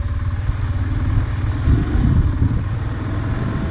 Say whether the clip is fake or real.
real